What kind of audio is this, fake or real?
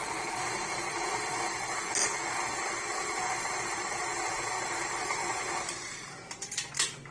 real